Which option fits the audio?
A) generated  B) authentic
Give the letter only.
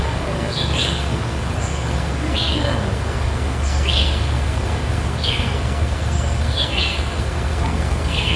A